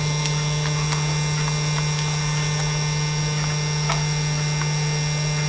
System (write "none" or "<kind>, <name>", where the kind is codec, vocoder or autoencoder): none